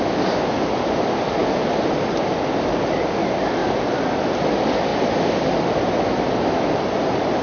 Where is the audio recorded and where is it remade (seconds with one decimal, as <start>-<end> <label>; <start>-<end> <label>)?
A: 0.0-7.4 recorded